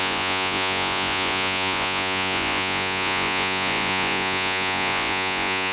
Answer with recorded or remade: remade